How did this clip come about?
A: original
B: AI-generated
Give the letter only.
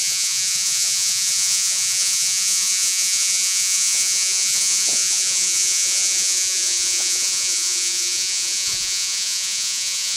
B